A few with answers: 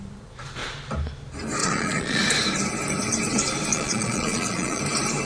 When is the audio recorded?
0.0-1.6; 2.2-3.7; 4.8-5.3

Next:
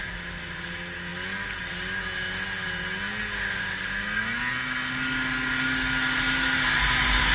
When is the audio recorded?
0.0-7.3

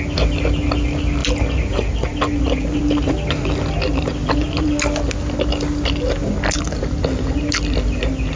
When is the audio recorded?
0.0-8.4

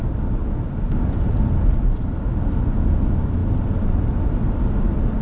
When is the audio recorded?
0.0-5.2

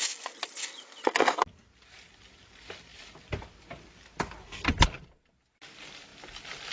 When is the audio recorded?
0.0-6.7